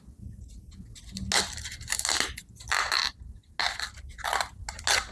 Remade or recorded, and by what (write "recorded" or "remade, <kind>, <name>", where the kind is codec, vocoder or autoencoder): recorded